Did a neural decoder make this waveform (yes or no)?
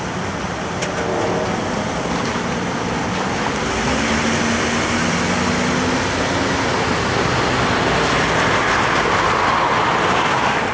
no